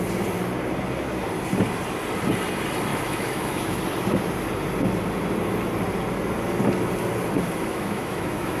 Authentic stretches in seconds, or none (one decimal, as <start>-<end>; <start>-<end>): 0.0-2.9; 3.8-7.7